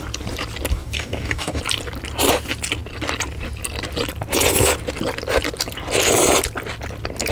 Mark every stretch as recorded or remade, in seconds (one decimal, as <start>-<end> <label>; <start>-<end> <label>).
0.0-0.7 recorded; 0.7-1.6 remade; 1.6-7.3 recorded